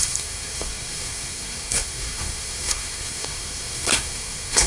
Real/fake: fake